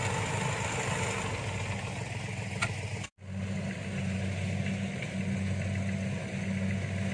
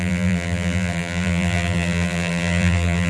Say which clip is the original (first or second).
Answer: first